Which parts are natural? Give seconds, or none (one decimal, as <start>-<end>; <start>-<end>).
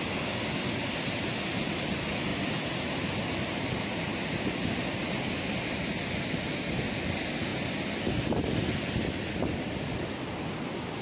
0.0-2.3; 5.0-11.0